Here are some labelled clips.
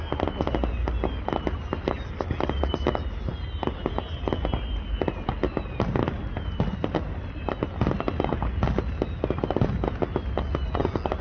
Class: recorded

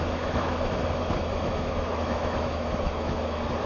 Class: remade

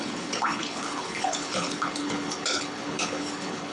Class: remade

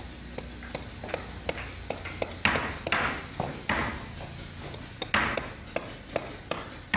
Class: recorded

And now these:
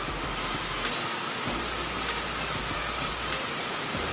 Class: recorded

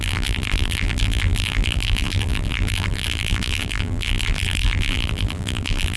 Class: remade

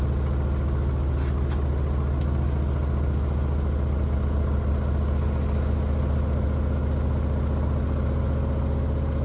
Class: recorded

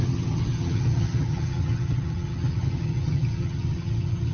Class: remade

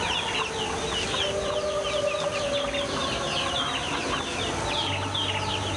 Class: recorded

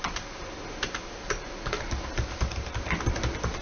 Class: recorded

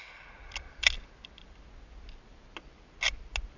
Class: recorded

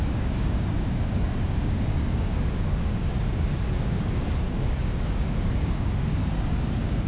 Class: remade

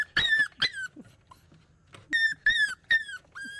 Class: recorded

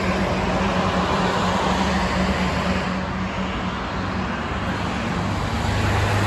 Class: recorded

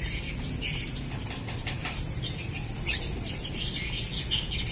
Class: recorded